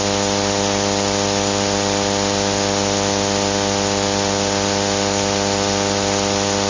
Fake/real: real